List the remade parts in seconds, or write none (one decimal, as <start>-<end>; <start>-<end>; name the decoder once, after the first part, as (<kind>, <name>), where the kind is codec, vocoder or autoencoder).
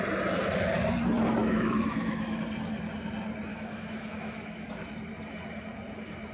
1.4-2.4 (autoencoder, DAC-VAE); 3.5-4.7